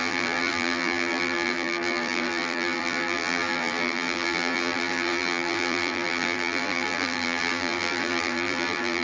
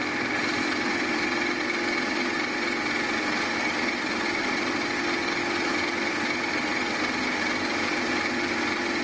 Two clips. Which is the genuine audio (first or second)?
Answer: second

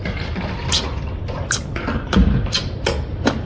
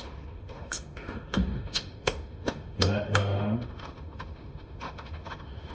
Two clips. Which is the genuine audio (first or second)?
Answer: first